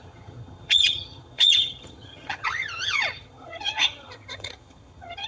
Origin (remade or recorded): remade